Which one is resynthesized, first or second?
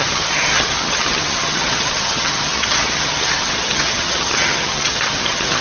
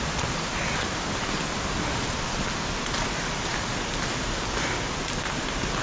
first